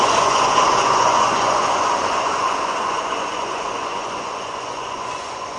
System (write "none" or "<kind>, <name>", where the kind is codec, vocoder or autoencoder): vocoder, Vocos